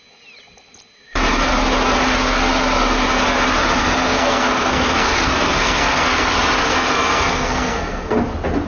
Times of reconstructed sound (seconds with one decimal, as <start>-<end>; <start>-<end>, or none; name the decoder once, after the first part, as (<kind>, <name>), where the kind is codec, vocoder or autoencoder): 3.8-6.3 (codec, SNAC); 6.7-8.2